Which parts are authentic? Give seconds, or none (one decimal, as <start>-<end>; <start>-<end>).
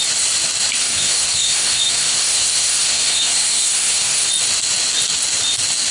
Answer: 0.0-0.8; 4.3-5.9